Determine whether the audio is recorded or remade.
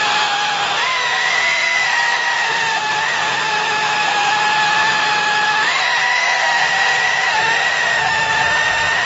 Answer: remade